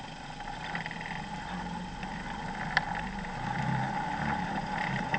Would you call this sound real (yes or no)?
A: yes